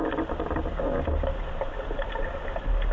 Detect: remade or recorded recorded